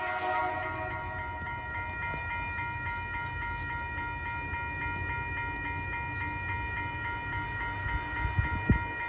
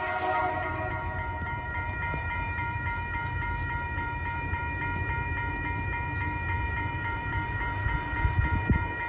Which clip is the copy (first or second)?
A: second